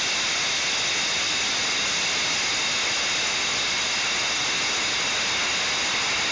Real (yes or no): yes